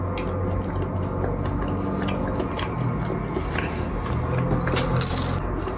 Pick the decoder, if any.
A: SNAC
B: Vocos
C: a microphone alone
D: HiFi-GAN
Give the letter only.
C